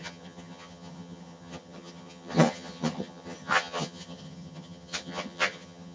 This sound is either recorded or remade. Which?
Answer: remade